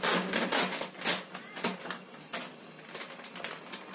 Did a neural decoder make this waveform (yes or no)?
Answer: no